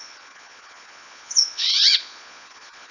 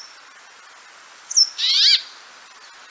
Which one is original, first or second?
second